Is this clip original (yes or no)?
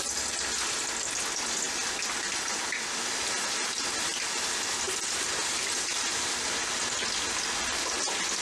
yes